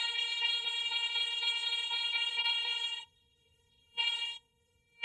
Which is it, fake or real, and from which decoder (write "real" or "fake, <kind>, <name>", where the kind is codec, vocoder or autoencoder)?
fake, codec, SNAC